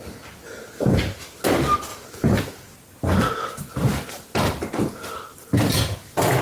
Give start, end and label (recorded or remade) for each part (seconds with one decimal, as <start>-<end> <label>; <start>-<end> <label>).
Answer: 0.0-6.4 recorded